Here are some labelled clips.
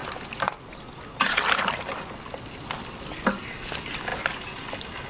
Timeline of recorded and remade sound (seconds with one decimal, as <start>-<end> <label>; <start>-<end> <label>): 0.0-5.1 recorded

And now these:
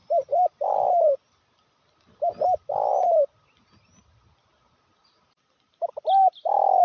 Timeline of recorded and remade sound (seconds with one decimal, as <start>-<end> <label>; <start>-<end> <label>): 0.0-0.9 remade; 0.9-6.8 recorded

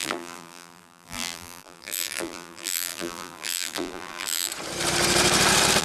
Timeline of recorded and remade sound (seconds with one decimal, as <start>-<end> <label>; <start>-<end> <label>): 0.0-4.5 remade; 4.5-5.8 recorded